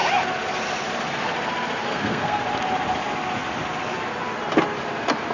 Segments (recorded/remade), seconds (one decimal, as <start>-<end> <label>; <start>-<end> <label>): 0.0-1.8 recorded; 1.8-2.4 remade; 2.4-5.3 recorded